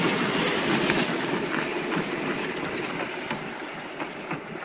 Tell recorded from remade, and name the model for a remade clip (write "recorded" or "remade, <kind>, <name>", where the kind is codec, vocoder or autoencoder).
recorded